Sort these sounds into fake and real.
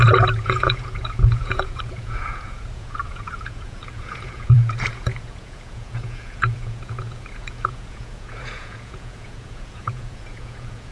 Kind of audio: fake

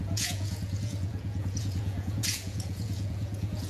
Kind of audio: fake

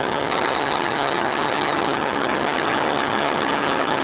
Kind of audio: fake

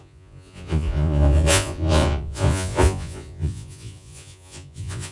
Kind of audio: fake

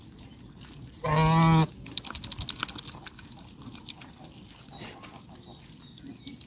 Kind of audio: real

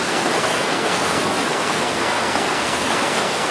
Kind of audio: fake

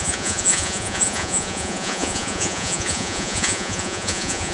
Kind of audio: fake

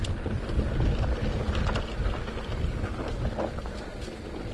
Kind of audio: real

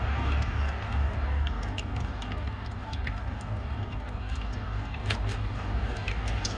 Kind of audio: fake